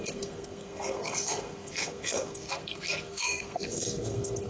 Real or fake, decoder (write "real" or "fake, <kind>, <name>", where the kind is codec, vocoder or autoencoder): fake, codec, SNAC